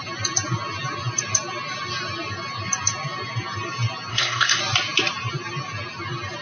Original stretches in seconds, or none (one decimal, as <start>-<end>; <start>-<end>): 0.0-4.1; 4.6-6.4